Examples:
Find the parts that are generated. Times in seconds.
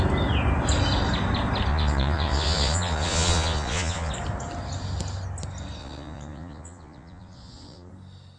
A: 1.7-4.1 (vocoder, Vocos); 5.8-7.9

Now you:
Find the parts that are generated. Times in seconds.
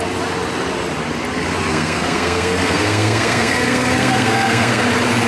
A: 1.7-4.8 (codec, SNAC)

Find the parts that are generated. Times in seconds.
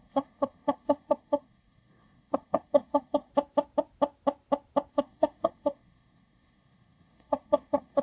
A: 0.0-3.3 (codec, SNAC); 4.9-8.0